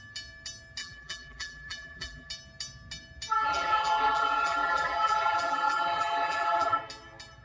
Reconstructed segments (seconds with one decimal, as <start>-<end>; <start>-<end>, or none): 0.8-2.3; 3.3-6.8